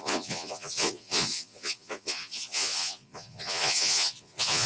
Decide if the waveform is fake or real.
fake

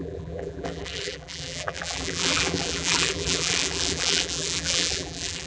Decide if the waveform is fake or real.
fake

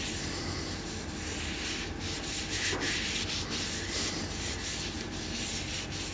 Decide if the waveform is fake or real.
real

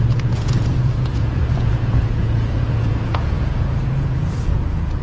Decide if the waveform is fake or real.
fake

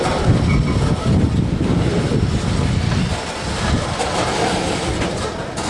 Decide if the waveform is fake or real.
real